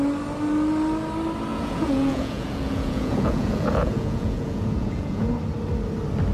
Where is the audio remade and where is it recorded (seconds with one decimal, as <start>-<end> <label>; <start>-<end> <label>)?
0.0-1.5 recorded; 1.5-5.3 remade; 5.3-6.3 recorded